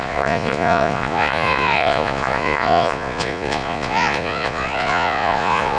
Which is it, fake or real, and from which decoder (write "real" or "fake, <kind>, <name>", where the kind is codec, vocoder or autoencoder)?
fake, vocoder, Vocos